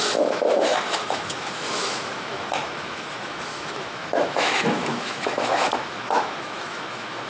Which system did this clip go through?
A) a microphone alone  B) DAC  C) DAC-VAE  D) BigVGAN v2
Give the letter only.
C